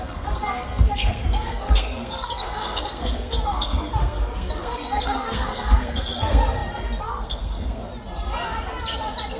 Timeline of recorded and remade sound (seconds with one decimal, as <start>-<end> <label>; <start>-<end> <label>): 0.0-7.9 remade; 7.9-9.4 recorded